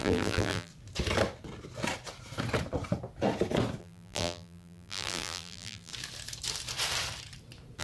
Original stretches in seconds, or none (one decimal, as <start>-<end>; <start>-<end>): 0.7-3.8; 5.9-7.8